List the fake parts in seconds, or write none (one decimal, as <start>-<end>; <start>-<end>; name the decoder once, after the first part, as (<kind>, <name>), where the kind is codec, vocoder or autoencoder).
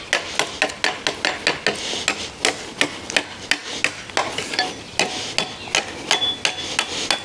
none